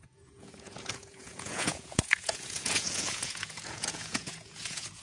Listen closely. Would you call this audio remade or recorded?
remade